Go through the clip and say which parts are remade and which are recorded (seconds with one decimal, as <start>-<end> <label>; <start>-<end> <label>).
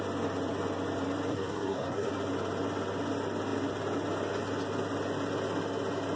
0.0-1.3 recorded; 1.3-2.1 remade; 2.1-6.2 recorded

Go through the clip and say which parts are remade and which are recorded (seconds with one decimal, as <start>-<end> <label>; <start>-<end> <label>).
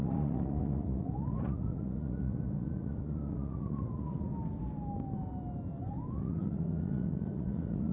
0.0-4.3 remade; 4.3-6.1 recorded; 6.1-7.9 remade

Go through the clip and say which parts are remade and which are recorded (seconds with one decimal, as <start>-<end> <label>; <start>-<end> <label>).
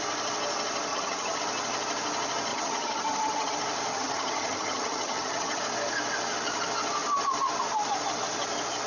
0.0-0.9 recorded; 0.9-1.4 remade; 1.4-2.5 recorded; 2.5-3.5 remade; 3.5-3.9 recorded; 3.9-5.6 remade; 5.6-8.9 recorded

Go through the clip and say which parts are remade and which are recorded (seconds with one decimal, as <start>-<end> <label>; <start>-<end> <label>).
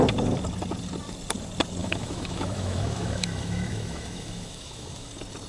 0.0-1.8 recorded; 1.8-5.1 remade; 5.1-5.5 recorded